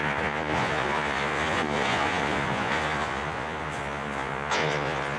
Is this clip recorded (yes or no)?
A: no